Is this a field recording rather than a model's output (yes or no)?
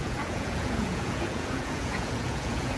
no